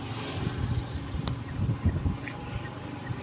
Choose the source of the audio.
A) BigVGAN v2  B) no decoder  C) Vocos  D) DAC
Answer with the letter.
B